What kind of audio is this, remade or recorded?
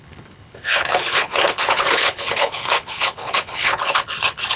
remade